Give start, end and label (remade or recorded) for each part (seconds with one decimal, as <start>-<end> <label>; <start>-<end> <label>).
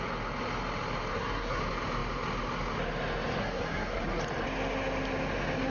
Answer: 0.0-1.1 recorded; 1.1-1.6 remade; 1.6-3.4 recorded; 3.4-4.2 remade; 4.2-5.7 recorded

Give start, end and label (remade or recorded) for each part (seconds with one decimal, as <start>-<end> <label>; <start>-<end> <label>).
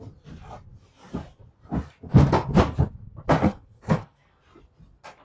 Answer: 0.0-3.4 recorded; 3.4-4.4 remade; 4.4-5.2 recorded